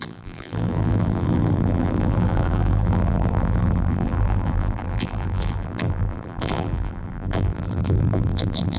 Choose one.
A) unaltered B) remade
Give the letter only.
B